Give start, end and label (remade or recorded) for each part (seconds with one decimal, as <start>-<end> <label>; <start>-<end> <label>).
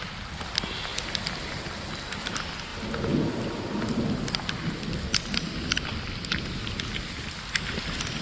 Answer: 0.0-8.2 recorded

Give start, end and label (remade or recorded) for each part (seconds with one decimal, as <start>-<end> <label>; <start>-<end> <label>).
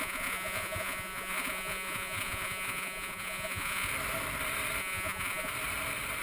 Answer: 0.0-3.9 remade; 3.9-4.8 recorded; 4.8-5.5 remade; 5.5-6.2 recorded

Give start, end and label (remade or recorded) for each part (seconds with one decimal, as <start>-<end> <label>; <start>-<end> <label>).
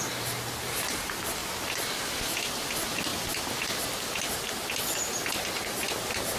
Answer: 0.0-6.4 recorded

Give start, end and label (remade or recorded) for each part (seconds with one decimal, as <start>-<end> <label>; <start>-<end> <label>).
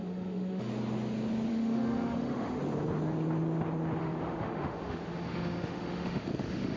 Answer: 0.0-0.7 remade; 0.7-1.5 recorded; 1.5-2.6 remade; 2.6-4.0 recorded; 4.0-6.8 remade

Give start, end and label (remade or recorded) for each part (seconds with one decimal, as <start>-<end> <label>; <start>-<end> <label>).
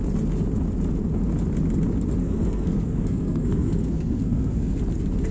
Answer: 0.0-2.2 recorded; 2.2-4.8 remade; 4.8-5.3 recorded